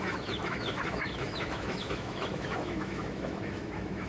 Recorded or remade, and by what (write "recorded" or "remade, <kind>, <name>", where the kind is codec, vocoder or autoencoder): remade, autoencoder, DAC-VAE